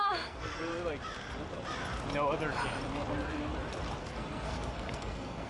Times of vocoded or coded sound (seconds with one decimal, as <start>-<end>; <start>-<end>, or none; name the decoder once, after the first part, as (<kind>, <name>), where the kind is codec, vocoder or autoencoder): 0.0-0.7 (codec, SNAC); 4.0-5.5